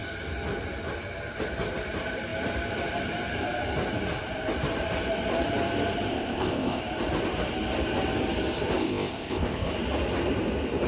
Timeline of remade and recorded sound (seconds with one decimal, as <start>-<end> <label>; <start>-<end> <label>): 0.0-6.1 recorded; 6.1-6.8 remade; 6.8-8.8 recorded; 8.8-9.7 remade; 9.7-10.9 recorded